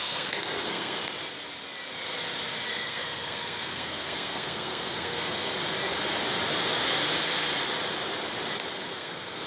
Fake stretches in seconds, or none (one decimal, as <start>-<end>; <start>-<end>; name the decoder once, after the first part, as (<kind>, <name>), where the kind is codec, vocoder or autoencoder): 0.0-1.0 (codec, SNAC); 2.7-5.5; 8.9-9.5